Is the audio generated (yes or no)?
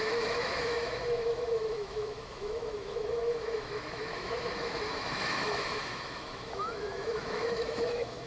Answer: yes